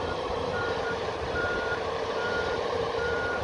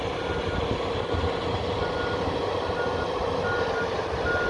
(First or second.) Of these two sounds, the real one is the second